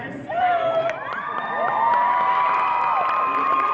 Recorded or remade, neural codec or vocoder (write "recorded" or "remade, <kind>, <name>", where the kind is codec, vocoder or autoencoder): recorded